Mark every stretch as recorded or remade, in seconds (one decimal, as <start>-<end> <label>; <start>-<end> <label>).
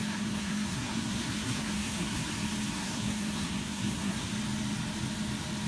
0.0-2.3 remade; 2.3-2.7 recorded; 2.7-4.3 remade; 4.3-5.7 recorded